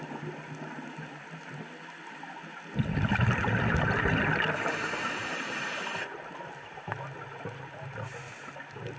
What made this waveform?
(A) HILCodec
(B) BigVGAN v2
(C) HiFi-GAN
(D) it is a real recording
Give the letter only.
D